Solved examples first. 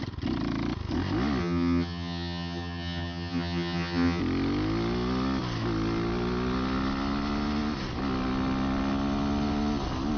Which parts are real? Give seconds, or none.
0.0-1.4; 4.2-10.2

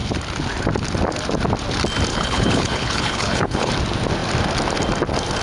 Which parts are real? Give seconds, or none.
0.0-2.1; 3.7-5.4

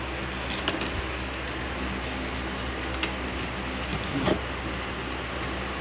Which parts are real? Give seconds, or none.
0.0-3.9; 4.4-5.8